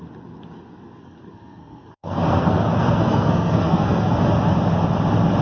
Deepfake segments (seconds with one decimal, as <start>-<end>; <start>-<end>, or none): 1.0-4.2